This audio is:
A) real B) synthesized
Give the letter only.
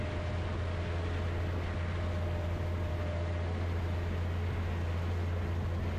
A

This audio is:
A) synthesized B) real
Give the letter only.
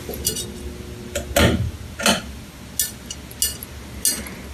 B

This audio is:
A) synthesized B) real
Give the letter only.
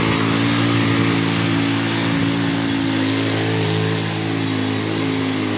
B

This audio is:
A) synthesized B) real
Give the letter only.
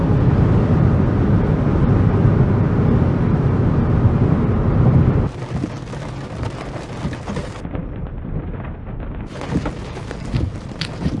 B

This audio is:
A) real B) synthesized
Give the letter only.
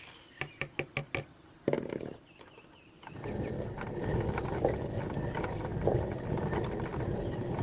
A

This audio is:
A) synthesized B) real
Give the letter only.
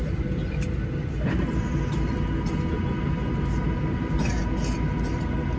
B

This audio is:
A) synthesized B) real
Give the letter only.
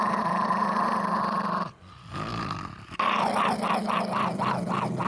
B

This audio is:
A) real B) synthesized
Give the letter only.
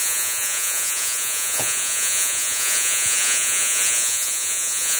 B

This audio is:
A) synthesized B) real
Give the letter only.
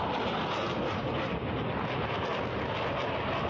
B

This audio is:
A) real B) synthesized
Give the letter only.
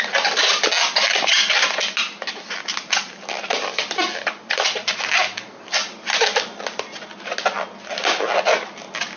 A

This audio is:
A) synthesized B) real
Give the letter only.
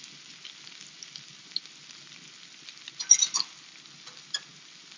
B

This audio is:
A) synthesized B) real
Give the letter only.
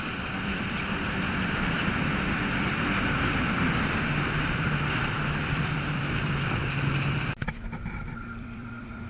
A